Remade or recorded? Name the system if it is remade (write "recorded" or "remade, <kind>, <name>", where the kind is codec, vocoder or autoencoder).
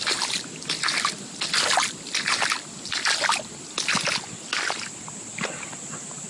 recorded